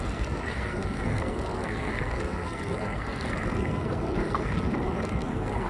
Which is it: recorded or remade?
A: remade